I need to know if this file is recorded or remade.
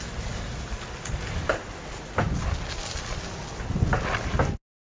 recorded